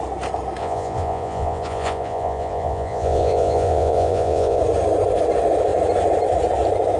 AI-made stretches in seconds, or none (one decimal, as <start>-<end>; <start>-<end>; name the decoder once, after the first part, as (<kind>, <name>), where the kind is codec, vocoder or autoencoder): 0.6-4.6 (vocoder, Vocos)